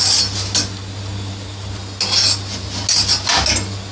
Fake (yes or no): no